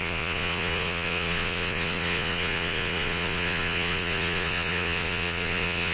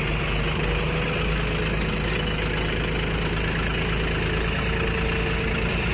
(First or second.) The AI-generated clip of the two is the first